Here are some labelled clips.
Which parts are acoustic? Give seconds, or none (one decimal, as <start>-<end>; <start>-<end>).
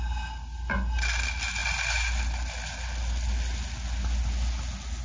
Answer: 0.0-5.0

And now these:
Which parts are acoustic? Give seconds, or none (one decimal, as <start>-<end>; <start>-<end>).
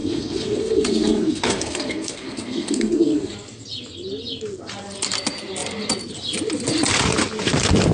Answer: 3.3-7.9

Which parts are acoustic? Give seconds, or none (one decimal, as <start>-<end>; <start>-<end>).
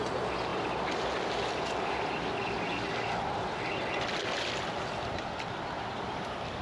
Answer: 0.0-6.6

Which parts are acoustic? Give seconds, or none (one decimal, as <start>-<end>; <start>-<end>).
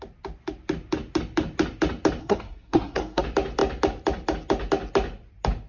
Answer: 0.0-2.2; 3.2-5.7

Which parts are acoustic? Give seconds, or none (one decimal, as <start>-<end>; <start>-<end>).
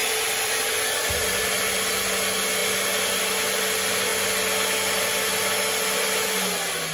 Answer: 1.0-6.9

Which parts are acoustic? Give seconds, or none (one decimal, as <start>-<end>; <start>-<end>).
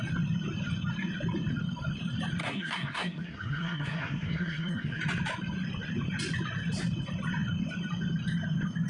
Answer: 0.0-2.4; 5.0-8.9